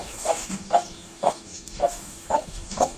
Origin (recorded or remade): remade